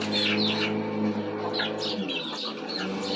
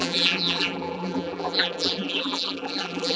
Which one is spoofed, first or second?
second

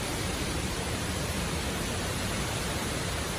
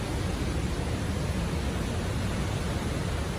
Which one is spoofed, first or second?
first